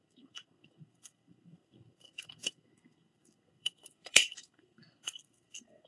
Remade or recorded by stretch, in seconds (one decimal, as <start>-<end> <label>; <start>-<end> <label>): 0.0-5.9 remade